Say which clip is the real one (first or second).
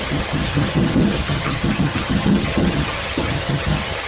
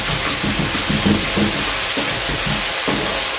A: second